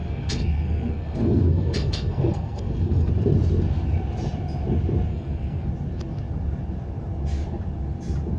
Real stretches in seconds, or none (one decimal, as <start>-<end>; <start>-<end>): 3.1-5.1; 5.7-8.4

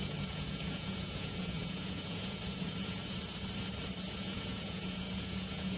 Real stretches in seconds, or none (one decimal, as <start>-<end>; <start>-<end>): 3.0-4.1